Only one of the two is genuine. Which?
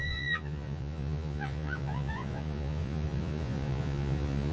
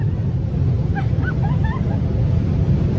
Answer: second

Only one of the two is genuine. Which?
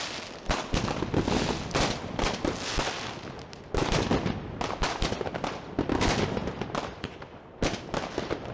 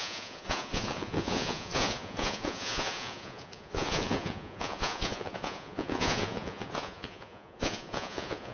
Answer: first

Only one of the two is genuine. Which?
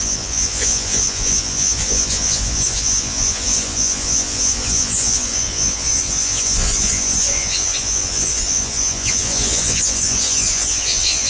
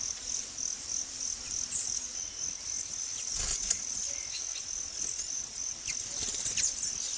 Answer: second